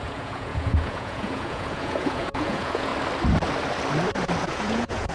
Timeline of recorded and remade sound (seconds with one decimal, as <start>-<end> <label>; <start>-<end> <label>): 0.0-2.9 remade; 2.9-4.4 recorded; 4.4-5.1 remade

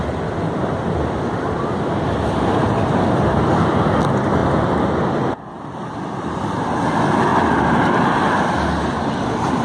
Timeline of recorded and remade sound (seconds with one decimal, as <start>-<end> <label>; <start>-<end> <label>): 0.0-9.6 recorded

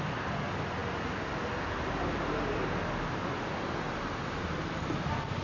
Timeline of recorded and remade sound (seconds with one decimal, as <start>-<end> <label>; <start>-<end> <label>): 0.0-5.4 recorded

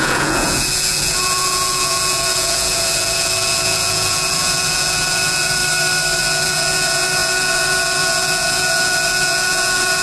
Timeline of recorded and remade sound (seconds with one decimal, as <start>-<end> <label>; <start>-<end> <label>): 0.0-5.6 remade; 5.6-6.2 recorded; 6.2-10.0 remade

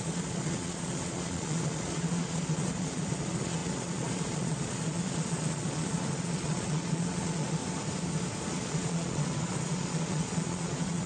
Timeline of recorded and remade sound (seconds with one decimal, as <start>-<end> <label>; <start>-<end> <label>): 0.0-7.6 remade; 7.6-8.5 recorded; 8.5-11.1 remade

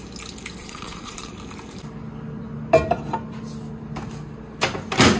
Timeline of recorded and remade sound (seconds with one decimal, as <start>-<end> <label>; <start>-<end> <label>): 0.0-0.6 recorded; 0.6-1.3 remade; 1.3-5.2 recorded

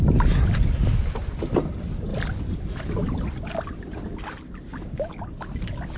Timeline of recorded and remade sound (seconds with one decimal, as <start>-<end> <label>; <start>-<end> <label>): 0.0-6.0 recorded

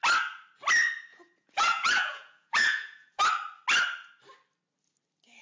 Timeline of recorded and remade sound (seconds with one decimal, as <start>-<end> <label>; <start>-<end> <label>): 0.0-1.1 recorded; 1.1-3.2 remade; 3.2-5.4 recorded